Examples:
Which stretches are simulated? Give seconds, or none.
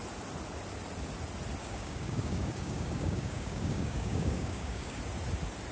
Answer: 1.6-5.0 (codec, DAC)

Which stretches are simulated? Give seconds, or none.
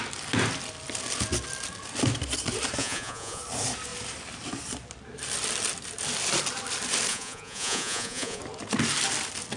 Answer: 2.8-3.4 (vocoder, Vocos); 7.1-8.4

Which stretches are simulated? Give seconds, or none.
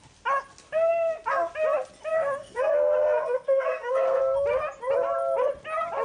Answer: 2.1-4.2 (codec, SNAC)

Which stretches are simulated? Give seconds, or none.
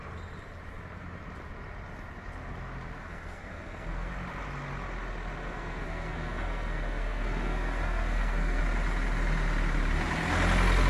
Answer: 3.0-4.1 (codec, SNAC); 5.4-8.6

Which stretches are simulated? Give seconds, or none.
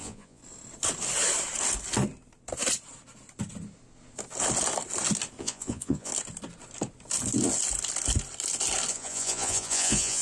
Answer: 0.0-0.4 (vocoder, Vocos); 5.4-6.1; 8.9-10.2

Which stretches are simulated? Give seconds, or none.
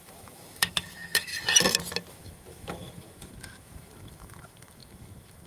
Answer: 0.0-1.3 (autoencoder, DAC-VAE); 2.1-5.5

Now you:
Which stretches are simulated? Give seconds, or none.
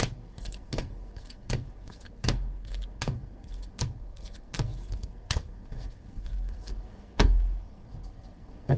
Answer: 0.0-8.8 (codec, SNAC)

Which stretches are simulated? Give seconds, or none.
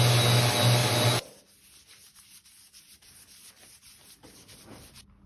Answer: 0.8-1.4 (vocoder, BigVGAN v2)